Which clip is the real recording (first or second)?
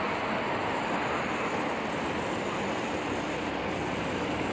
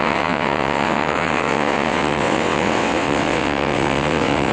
first